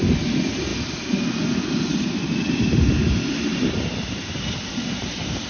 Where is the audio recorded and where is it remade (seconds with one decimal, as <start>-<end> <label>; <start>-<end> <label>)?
0.0-5.5 recorded